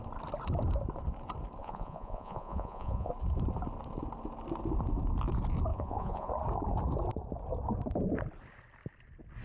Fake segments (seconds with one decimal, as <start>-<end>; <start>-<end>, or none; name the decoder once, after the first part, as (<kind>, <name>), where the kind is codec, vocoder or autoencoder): 1.6-3.1 (vocoder, Vocos); 5.7-6.3